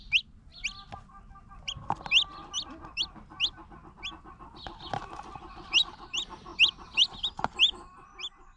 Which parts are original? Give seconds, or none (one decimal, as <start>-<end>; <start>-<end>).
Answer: 0.0-8.6